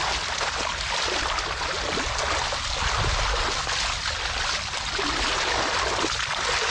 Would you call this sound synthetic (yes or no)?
no